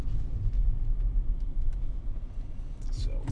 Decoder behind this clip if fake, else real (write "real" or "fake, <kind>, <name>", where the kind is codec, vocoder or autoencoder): real